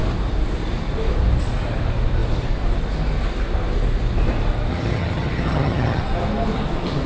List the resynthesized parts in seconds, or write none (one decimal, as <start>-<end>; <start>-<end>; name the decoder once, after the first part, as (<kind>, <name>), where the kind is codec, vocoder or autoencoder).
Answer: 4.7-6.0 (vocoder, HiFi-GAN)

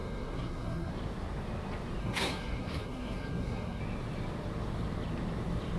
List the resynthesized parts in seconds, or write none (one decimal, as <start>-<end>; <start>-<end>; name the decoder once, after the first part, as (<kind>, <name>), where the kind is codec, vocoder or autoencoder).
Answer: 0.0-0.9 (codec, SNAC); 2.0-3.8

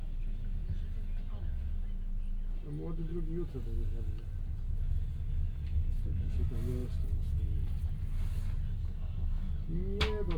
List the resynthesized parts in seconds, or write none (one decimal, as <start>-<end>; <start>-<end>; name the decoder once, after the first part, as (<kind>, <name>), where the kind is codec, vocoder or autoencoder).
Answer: 8.8-9.5 (autoencoder, DAC-VAE)

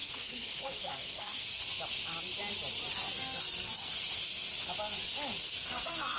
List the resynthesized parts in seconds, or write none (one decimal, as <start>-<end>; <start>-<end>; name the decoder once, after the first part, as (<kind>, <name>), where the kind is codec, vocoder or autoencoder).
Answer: 0.0-1.6 (codec, SNAC); 2.9-4.5; 5.4-6.2